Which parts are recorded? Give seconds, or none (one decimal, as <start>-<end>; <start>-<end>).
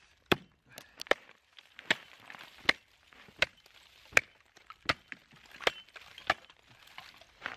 0.0-7.6